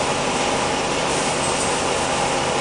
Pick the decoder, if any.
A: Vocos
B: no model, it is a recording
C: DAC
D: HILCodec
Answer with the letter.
B